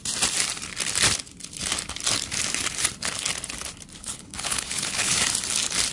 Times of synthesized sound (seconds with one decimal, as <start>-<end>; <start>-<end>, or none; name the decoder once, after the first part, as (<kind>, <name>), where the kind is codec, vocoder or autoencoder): 4.0-5.2 (codec, HILCodec)